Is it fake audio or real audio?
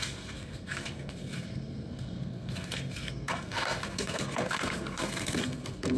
fake